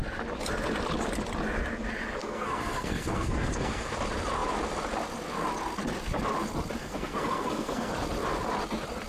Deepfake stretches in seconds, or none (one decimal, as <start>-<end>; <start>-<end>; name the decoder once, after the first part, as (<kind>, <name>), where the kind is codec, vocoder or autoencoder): 2.2-3.9 (codec, SNAC); 6.8-7.9